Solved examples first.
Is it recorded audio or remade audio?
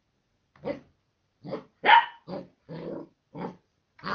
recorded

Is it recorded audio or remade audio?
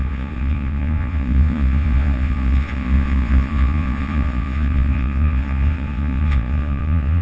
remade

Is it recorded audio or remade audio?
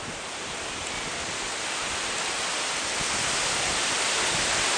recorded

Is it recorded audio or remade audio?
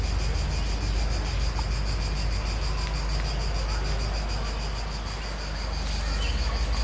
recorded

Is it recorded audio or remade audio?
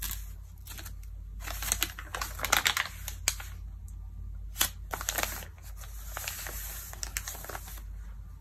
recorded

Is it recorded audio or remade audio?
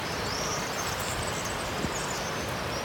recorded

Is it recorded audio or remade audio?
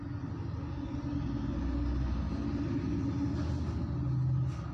recorded